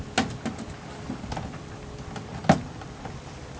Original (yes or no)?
yes